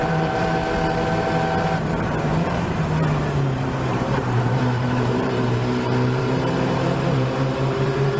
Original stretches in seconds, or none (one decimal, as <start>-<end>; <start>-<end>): 0.6-3.9